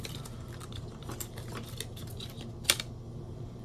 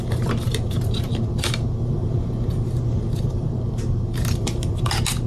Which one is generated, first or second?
second